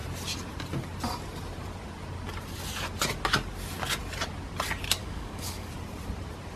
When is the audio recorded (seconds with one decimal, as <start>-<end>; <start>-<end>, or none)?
0.0-5.0; 5.7-6.6